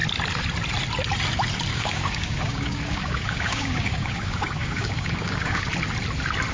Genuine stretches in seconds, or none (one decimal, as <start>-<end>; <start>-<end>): 0.0-1.7; 5.6-6.5